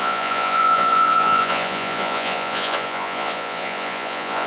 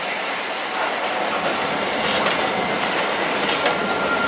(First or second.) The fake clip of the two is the first